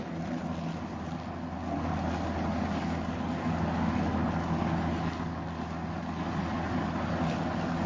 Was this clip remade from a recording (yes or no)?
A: no